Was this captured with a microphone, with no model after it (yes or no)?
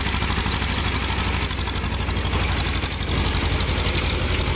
yes